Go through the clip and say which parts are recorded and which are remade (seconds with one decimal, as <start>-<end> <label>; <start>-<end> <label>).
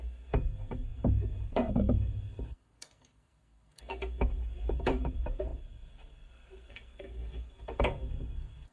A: 0.0-8.7 remade